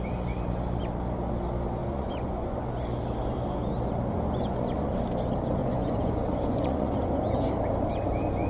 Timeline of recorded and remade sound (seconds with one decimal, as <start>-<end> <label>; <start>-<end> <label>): 0.0-1.8 recorded; 1.8-2.7 remade; 2.7-4.1 recorded; 4.1-4.9 remade; 4.9-5.6 recorded; 5.6-7.5 remade; 7.5-8.5 recorded